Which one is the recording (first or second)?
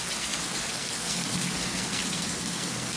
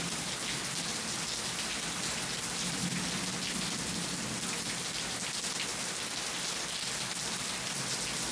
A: second